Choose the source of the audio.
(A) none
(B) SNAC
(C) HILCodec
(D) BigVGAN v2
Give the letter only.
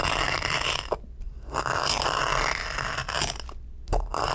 A